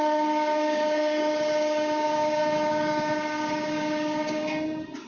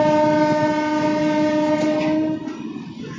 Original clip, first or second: second